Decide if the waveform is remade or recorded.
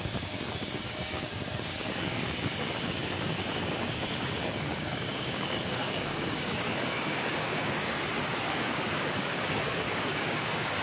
remade